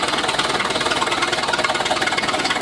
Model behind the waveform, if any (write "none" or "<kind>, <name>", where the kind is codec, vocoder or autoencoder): vocoder, Vocos